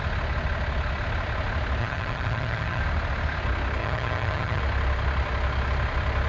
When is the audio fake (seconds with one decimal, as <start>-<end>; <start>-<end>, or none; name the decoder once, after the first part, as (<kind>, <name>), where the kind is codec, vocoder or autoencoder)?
1.8-2.8 (vocoder, HiFi-GAN); 3.8-4.6